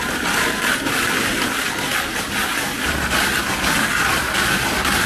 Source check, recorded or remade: recorded